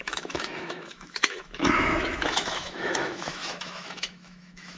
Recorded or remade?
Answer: remade